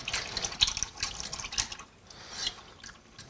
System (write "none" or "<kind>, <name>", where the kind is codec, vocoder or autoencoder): none